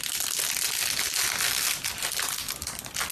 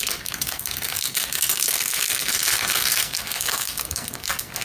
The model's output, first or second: second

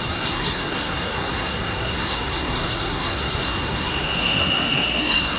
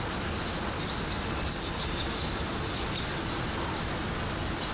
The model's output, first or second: first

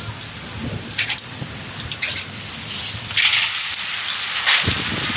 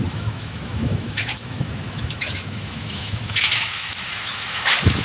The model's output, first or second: second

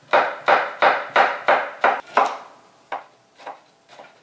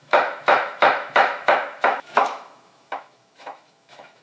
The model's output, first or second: second